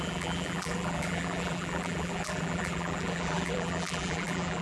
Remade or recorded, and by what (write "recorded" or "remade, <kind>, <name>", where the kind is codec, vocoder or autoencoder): remade, vocoder, BigVGAN v2